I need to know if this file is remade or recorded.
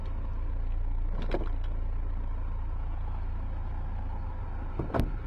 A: recorded